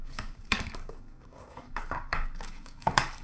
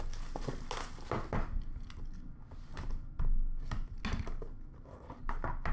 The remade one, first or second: first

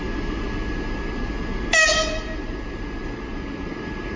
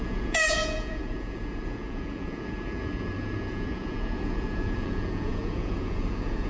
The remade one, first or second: second